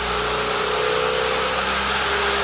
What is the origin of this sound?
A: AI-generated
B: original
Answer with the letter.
B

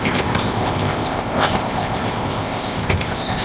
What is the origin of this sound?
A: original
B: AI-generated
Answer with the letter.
B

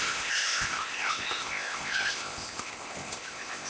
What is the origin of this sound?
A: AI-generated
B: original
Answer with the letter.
A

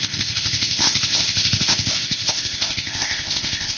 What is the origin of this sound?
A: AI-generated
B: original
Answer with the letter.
A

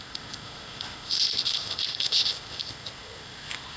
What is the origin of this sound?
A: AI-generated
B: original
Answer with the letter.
A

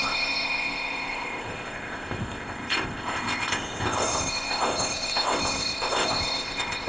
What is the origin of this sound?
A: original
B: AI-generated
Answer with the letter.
B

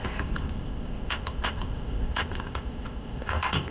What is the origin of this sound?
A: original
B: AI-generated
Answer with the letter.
B